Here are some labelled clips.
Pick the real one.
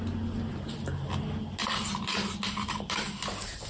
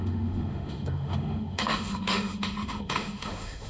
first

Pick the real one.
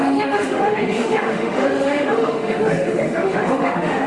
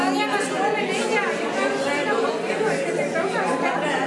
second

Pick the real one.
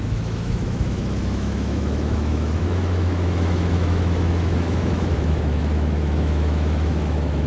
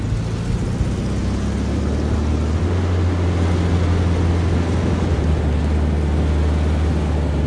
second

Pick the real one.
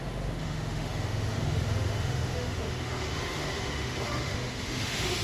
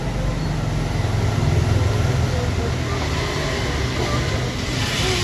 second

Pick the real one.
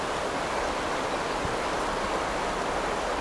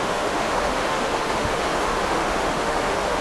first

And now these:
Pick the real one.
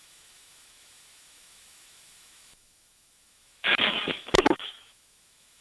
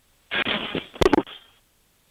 second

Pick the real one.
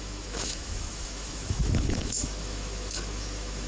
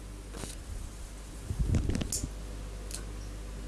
second